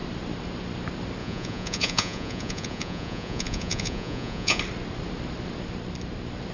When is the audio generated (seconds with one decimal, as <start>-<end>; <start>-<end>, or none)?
1.2-4.6